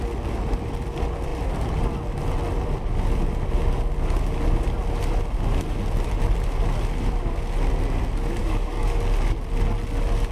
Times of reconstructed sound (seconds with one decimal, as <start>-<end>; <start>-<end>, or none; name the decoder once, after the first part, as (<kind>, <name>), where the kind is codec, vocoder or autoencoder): 8.4-9.0 (codec, DAC)